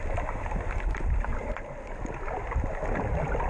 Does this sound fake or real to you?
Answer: real